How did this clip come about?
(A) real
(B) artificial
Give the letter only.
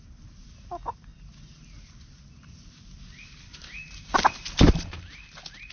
A